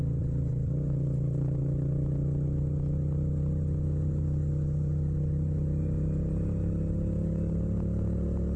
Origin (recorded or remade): recorded